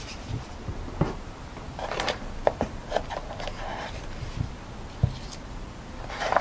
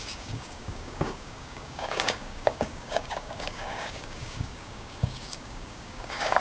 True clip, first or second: first